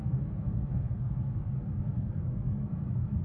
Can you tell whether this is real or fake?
fake